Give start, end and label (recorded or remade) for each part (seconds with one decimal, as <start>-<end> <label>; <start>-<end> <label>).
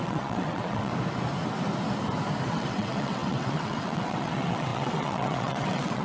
0.0-0.9 remade; 0.9-2.5 recorded; 2.5-6.0 remade